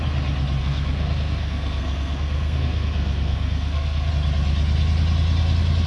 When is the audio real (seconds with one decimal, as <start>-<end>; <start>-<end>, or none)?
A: 0.0-0.6; 4.1-5.9